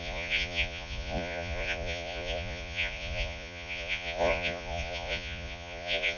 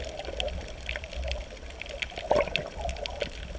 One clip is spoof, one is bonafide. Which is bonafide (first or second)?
second